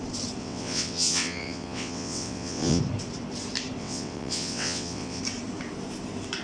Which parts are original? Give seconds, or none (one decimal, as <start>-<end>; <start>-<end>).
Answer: 0.0-0.4; 2.8-3.8; 5.2-6.4